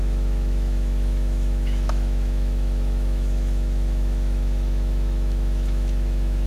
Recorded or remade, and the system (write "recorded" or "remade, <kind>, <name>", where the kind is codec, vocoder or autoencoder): remade, autoencoder, DAC-VAE